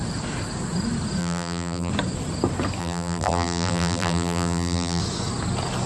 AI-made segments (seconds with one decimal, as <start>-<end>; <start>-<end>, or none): 1.2-1.9; 2.8-5.0